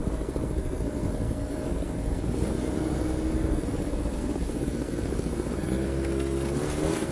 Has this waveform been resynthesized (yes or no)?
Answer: yes